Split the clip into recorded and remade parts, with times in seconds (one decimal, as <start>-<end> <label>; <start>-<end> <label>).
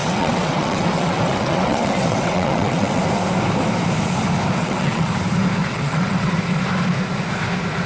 0.0-3.0 remade; 3.0-4.6 recorded; 4.6-5.1 remade; 5.1-5.6 recorded; 5.6-6.3 remade; 6.3-7.9 recorded